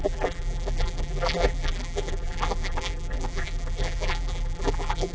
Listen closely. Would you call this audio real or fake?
fake